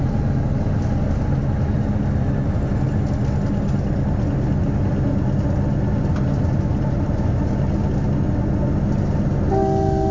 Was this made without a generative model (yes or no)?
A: yes